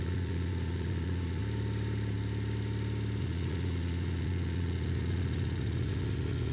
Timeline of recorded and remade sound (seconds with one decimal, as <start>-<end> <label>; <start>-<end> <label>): 0.0-1.4 remade; 1.4-3.2 recorded; 3.2-6.5 remade